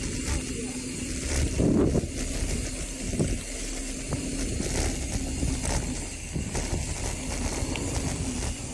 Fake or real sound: real